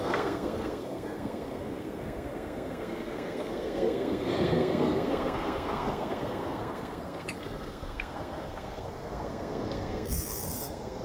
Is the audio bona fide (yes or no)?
no